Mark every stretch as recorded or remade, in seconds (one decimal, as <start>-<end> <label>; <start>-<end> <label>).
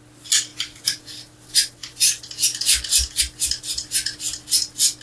0.0-5.0 recorded